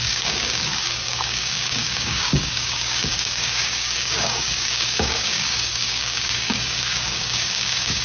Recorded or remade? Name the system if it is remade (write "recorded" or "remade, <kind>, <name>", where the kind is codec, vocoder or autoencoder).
remade, codec, DAC